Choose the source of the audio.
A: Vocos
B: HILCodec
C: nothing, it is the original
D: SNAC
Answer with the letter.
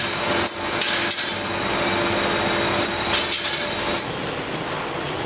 C